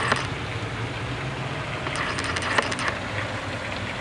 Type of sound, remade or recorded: recorded